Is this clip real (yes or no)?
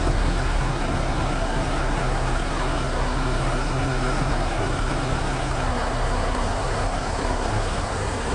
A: no